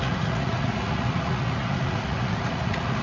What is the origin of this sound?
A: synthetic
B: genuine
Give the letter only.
A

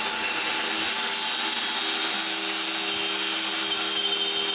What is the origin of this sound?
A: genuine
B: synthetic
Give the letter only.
A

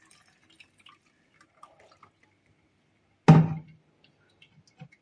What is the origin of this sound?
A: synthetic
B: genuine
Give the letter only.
B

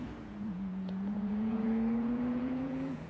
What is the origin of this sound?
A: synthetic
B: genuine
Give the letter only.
A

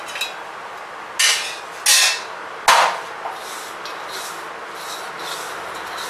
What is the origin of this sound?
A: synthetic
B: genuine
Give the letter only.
B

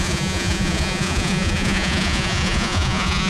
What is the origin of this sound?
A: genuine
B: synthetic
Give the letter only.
B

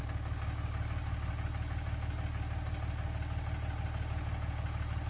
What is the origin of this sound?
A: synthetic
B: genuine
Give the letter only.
B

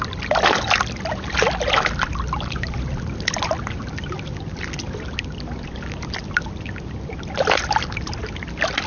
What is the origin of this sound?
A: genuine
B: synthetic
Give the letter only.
A